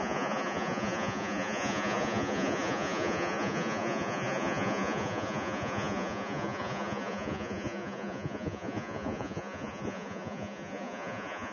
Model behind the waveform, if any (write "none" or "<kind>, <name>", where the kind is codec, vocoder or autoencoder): vocoder, Vocos